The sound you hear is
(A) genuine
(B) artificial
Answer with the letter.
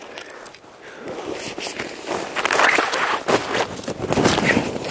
A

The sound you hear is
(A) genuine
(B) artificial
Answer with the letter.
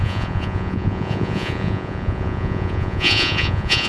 B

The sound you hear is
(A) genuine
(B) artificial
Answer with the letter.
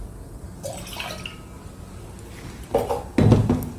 A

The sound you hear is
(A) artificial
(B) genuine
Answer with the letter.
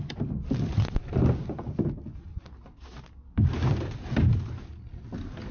B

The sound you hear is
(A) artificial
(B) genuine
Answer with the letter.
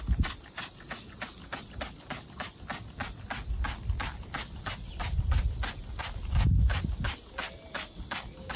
B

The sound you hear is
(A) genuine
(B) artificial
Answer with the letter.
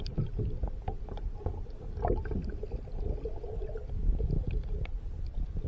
A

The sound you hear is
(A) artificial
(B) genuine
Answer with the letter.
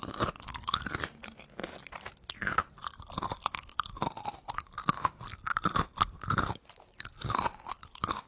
B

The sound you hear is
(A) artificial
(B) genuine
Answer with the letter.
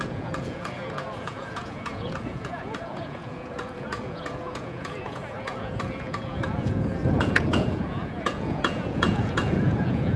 A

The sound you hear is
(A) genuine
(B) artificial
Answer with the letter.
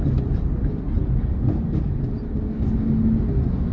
A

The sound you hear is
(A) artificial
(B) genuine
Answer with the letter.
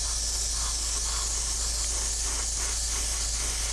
B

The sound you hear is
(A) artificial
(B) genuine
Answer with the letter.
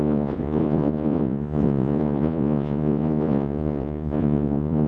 A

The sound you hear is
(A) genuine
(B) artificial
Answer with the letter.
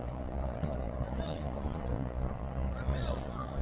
B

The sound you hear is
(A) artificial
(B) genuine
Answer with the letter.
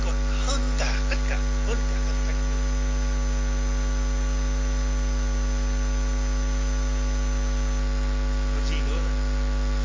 B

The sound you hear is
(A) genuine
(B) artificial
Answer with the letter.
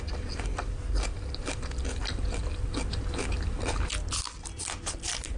A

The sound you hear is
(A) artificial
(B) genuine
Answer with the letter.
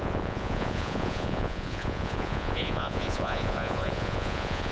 A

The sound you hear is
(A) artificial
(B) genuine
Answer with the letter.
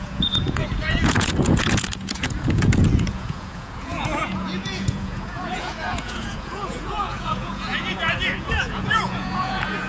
A